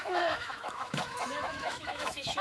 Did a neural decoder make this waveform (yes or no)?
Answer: yes